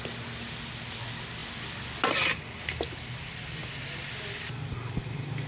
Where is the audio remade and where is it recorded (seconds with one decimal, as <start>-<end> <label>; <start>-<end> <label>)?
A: 0.0-5.5 recorded